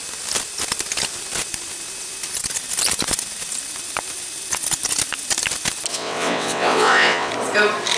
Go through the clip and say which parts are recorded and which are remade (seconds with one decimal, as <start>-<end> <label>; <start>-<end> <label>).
0.0-5.9 recorded; 5.9-7.3 remade; 7.3-8.0 recorded